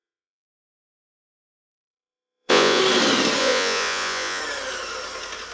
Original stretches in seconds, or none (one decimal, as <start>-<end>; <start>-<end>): 2.8-3.4; 4.4-5.5